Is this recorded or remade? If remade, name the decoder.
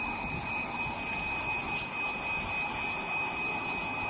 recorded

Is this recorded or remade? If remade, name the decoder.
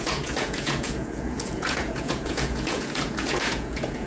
remade, vocoder, Vocos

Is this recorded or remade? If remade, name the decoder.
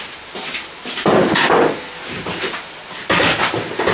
recorded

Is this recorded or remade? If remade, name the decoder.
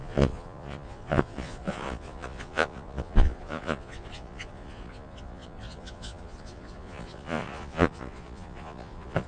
remade, vocoder, Vocos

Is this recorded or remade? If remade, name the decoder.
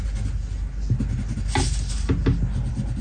recorded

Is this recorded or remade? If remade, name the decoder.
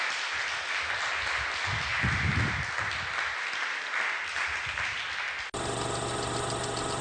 recorded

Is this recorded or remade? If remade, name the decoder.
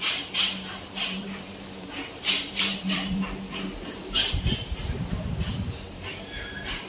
remade, vocoder, BigVGAN v2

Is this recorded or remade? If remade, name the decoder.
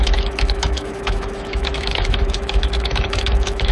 remade, autoencoder, DAC-VAE